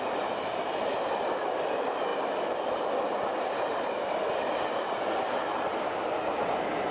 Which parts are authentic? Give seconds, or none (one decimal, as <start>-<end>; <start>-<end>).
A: 0.0-6.9